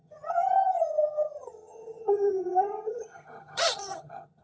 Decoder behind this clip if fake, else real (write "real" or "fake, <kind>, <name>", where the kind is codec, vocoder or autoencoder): fake, vocoder, HiFi-GAN